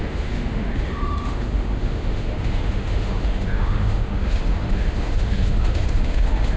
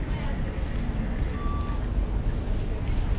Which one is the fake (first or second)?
first